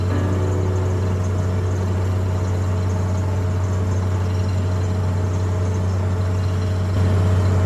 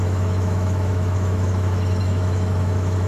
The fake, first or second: second